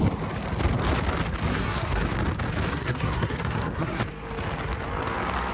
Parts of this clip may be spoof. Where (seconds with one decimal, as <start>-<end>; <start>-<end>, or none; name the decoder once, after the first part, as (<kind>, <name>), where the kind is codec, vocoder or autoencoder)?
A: 1.5-2.0 (codec, SNAC); 2.7-4.0